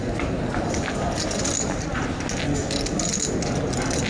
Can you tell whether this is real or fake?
real